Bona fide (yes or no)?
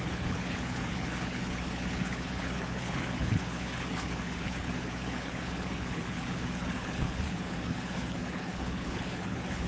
no